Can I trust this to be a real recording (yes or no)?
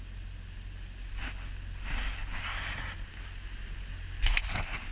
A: yes